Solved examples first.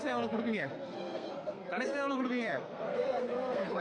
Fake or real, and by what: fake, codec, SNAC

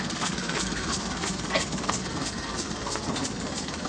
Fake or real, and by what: fake, codec, SNAC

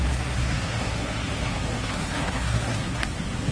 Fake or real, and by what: fake, codec, SNAC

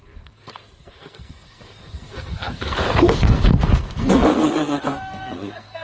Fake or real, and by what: fake, codec, SNAC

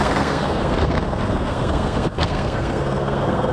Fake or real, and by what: fake, codec, SNAC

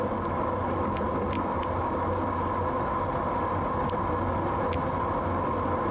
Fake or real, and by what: real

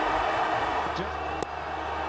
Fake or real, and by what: real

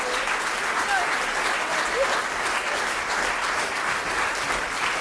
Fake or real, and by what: real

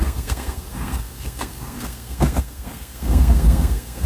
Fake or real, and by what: fake, codec, SNAC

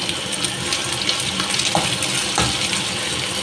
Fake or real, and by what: real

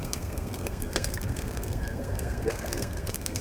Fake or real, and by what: fake, codec, SNAC